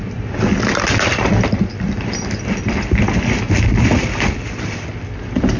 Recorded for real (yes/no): yes